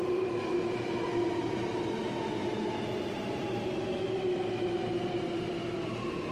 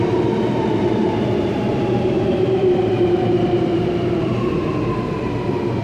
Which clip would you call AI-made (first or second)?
second